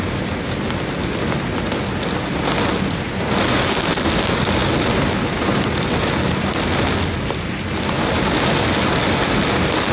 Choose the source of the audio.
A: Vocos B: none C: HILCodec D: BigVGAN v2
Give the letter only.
B